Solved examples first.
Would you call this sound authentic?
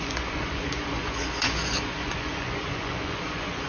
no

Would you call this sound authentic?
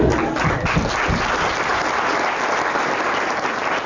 yes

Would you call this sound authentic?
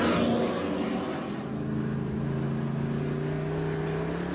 yes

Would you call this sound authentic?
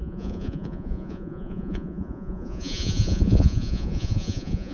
no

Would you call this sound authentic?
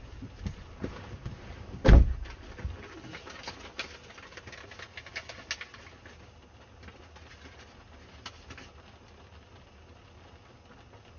yes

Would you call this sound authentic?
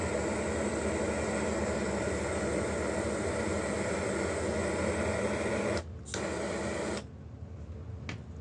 yes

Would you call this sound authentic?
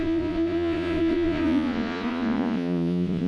no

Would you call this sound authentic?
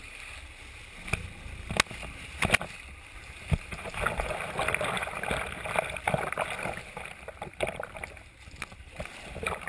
yes